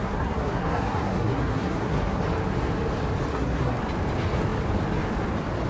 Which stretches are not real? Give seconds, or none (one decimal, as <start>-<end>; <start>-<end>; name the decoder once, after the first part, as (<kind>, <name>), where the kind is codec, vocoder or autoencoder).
0.0-2.2 (codec, SNAC); 3.3-3.8